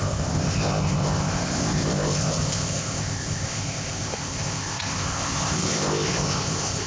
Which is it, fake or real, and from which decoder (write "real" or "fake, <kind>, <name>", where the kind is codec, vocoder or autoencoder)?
fake, codec, ZipCodec